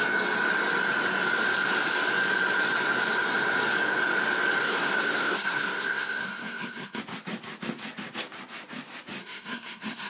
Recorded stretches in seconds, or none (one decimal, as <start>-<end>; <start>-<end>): 0.0-4.6; 7.0-9.2

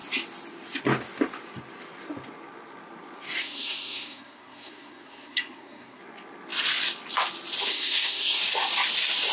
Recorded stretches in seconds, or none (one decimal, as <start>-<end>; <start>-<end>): 0.0-3.4; 6.0-7.7; 8.4-9.3

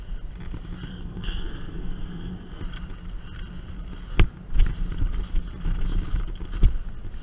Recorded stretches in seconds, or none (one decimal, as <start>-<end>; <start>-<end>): 0.0-0.9; 2.6-7.2

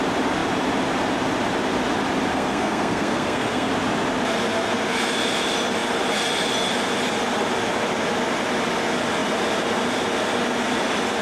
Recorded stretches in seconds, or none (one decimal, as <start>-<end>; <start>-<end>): 0.0-2.3; 3.7-11.2

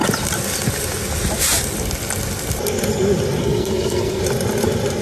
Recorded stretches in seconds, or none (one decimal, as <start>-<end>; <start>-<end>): 0.0-3.4; 4.2-5.0

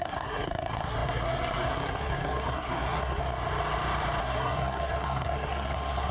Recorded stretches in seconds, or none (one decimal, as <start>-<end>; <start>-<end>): 3.2-4.2